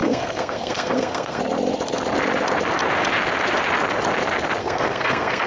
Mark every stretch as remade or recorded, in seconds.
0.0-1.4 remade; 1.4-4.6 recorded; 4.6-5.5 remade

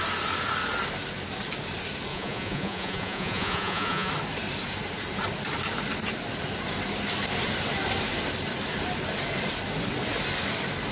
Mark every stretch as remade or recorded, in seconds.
0.0-2.1 recorded; 2.1-4.1 remade; 4.1-10.9 recorded

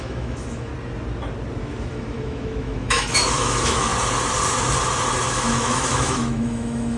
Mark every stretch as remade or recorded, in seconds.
0.0-0.7 remade; 0.7-1.6 recorded; 1.6-3.9 remade; 3.9-5.3 recorded; 5.3-7.0 remade

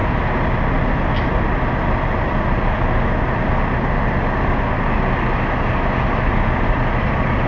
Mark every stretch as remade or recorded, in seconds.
0.0-7.5 recorded

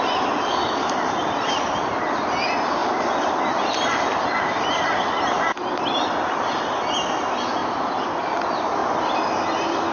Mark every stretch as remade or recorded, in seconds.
0.0-2.8 recorded; 2.8-5.1 remade; 5.1-7.6 recorded; 7.6-8.3 remade; 8.3-9.9 recorded